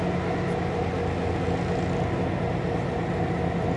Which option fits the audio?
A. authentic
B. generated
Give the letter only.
A